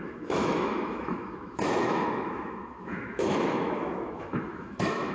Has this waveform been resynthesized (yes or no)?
yes